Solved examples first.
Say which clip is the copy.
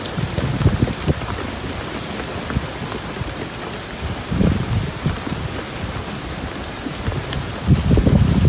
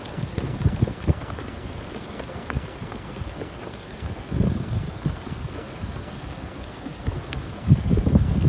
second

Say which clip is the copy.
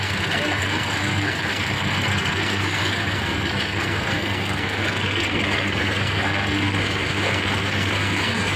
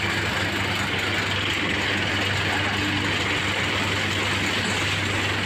first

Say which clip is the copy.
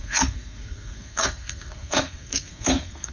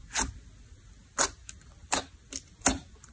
first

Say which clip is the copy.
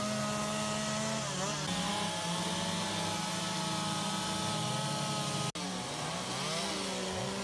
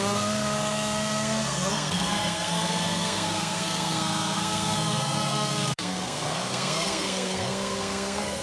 second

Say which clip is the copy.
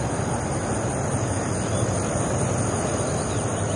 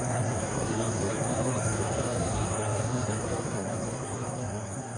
second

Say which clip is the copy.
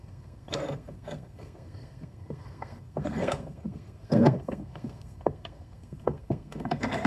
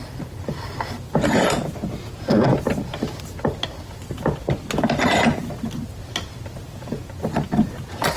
first